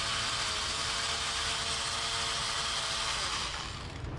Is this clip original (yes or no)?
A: yes